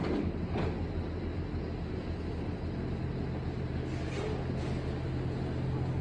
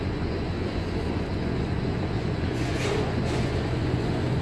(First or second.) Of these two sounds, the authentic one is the first